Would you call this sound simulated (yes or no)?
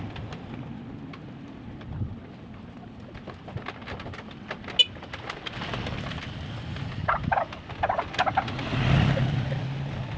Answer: no